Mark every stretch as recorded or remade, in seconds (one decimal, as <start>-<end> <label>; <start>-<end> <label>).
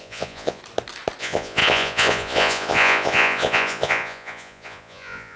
0.0-0.6 remade; 0.6-1.2 recorded; 1.2-5.4 remade